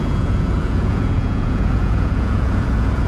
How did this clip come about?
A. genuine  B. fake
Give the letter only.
B